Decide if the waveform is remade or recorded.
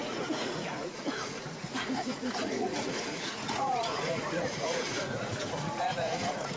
remade